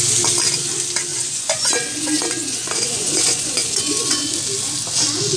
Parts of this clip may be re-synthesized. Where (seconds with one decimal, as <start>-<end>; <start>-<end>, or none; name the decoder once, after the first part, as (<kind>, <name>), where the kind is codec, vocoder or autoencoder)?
1.1-4.3 (vocoder, Vocos)